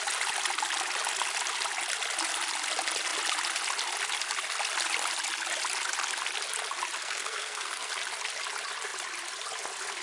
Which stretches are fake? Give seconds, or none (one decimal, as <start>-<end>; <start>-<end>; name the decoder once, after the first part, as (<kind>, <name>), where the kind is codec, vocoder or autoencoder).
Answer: 7.0-7.9 (codec, SNAC)